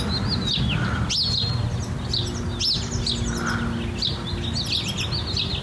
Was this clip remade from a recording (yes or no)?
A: no